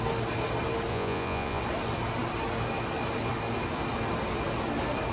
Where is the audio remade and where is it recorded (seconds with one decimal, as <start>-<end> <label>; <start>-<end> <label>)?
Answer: 0.0-0.9 recorded; 0.9-1.6 remade; 1.6-5.1 recorded

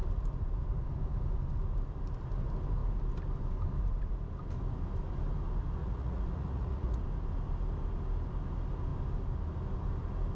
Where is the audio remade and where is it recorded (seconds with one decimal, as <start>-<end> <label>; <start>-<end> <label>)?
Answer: 0.0-5.8 recorded; 5.8-7.0 remade; 7.0-10.3 recorded

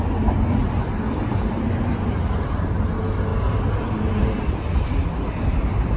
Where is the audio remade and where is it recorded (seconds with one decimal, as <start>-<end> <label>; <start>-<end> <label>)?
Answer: 0.0-2.1 recorded; 2.1-2.8 remade; 2.8-3.3 recorded; 3.3-4.6 remade; 4.6-6.0 recorded

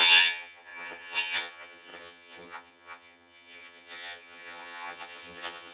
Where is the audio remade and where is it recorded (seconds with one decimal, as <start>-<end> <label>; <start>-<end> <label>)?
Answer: 0.0-5.7 remade

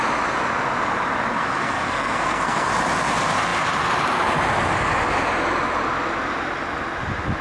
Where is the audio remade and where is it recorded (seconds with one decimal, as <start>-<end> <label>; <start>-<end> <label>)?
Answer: 0.0-1.3 recorded; 1.3-2.7 remade; 2.7-7.4 recorded